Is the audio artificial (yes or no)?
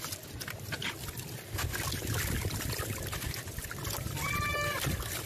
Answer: no